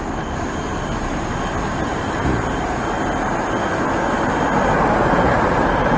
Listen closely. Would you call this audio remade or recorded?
recorded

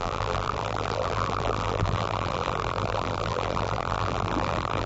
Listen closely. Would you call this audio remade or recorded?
remade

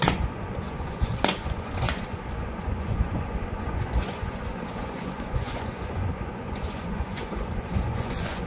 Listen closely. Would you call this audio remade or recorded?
remade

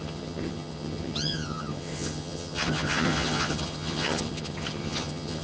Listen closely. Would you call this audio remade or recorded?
remade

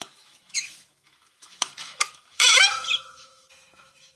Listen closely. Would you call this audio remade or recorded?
remade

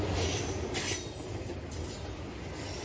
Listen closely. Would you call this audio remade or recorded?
recorded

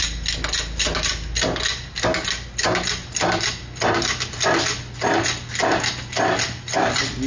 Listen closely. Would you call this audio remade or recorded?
recorded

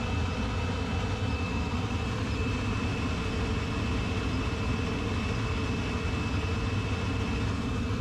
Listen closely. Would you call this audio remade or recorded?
recorded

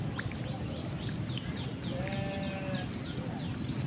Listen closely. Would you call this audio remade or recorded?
recorded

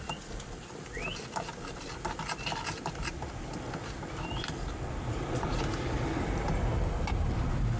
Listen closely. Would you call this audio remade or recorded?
recorded